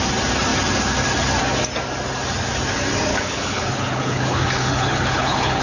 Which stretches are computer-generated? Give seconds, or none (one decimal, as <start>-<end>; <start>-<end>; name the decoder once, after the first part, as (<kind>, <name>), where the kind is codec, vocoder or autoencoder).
3.1-5.6 (codec, HILCodec)